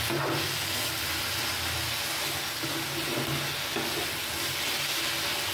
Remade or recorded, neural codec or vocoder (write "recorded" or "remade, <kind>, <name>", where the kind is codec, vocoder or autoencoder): recorded